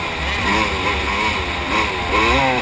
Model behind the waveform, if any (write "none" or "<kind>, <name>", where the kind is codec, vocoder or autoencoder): none